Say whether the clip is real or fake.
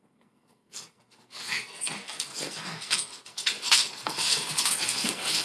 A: fake